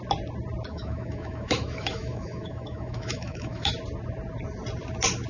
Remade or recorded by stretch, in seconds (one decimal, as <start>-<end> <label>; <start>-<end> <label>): 0.0-0.7 recorded; 0.7-3.7 remade; 3.7-5.3 recorded